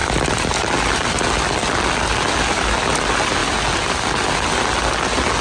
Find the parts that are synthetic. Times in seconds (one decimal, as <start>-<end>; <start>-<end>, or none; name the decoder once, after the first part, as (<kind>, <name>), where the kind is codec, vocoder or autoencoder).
none